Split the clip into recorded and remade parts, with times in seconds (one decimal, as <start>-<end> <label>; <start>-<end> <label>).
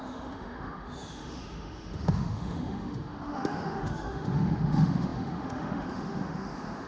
0.0-6.9 remade